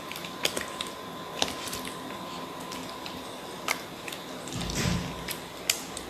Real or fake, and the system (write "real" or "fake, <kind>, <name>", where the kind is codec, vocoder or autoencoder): real